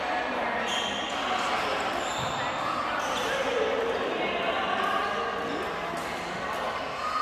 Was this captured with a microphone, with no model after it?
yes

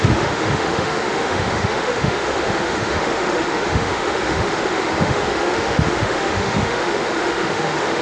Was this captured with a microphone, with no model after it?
no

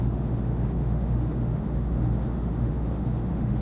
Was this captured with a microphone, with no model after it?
no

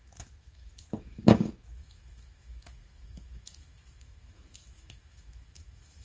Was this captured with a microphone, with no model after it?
no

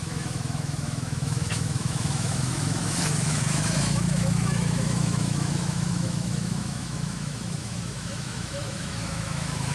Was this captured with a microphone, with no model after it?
no